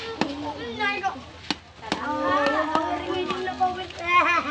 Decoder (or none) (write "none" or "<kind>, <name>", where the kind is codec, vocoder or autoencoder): none